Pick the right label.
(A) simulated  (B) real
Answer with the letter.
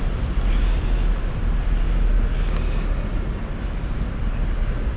B